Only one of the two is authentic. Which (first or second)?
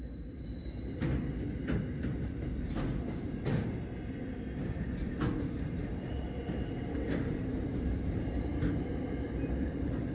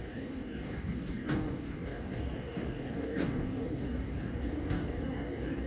first